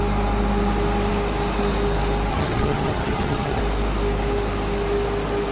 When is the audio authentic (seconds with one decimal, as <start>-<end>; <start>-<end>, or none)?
0.0-2.3; 3.6-5.5